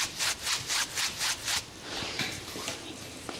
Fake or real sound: real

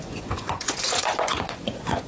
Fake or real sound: fake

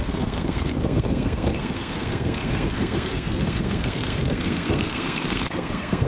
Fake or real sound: fake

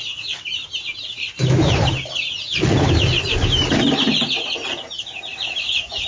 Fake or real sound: fake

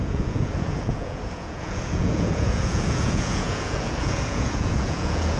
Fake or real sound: fake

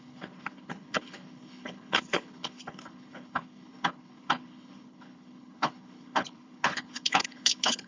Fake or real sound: fake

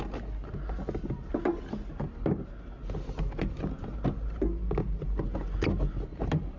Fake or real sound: real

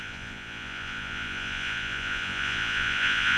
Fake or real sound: fake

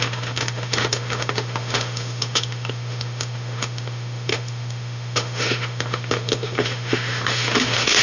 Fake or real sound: fake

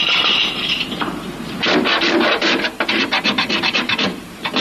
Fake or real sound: fake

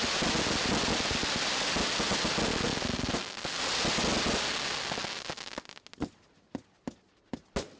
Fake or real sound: real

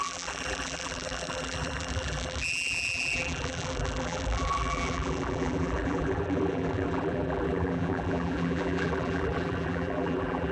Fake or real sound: fake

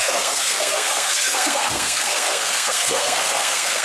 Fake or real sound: fake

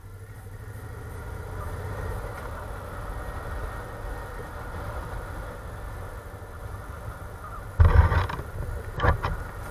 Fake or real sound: real